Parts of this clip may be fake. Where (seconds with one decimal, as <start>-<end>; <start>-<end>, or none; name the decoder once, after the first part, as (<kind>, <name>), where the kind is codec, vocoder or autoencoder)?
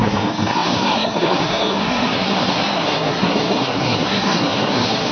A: 0.0-5.1 (codec, SNAC)